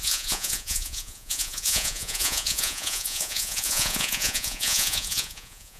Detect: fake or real fake